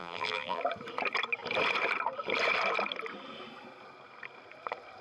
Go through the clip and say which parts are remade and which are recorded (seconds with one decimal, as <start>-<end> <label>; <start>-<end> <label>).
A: 0.0-0.6 remade; 0.6-5.0 recorded